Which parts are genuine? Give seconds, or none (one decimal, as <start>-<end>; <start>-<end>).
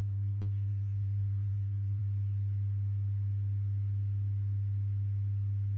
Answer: 2.0-5.8